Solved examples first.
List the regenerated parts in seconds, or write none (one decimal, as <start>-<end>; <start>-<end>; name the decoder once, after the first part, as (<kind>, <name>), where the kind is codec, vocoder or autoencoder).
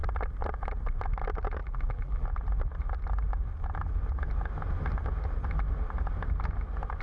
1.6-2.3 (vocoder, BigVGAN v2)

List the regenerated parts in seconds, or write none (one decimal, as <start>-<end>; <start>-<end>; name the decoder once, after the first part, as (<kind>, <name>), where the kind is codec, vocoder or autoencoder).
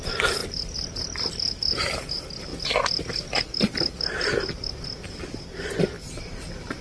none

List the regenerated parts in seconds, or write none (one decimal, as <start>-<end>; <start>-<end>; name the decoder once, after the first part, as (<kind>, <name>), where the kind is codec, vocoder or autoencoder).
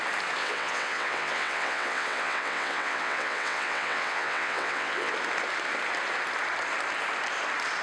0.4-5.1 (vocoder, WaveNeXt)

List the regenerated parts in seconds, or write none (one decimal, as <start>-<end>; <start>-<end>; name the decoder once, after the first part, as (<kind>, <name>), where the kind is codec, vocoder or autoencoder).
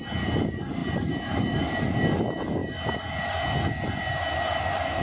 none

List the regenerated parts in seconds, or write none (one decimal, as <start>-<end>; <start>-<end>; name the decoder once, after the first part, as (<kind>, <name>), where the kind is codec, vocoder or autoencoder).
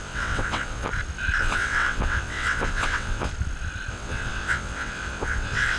0.0-0.9 (vocoder, WaveNeXt); 1.4-3.3; 3.9-5.8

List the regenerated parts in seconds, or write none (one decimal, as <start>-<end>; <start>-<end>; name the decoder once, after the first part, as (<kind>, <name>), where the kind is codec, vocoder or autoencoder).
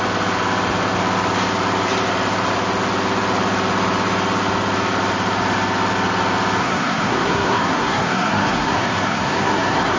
6.6-10.0 (codec, SNAC)